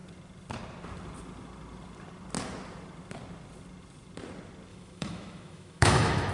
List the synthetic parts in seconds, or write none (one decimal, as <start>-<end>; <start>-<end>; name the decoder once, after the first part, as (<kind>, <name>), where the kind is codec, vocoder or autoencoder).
4.7-6.3 (autoencoder, DAC-VAE)